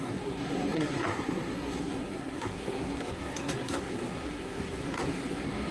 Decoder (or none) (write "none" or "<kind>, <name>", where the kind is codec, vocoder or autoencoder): codec, SNAC